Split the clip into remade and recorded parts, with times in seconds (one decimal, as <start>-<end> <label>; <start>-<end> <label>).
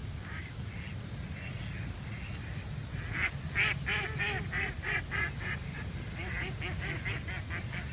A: 0.0-0.7 remade; 0.7-7.9 recorded